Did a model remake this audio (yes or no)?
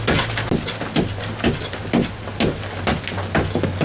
no